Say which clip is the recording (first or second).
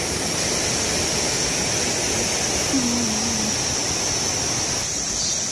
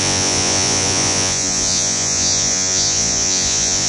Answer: first